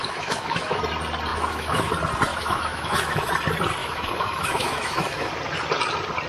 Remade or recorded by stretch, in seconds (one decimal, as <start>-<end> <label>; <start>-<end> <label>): 0.0-0.8 remade; 0.8-1.3 recorded; 1.3-1.9 remade; 1.9-2.3 recorded; 2.3-3.3 remade; 3.3-3.8 recorded; 3.8-5.3 remade; 5.3-6.3 recorded